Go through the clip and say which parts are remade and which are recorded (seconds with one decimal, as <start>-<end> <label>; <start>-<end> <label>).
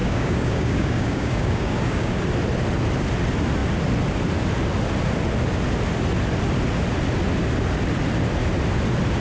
0.0-2.2 remade; 2.2-9.2 recorded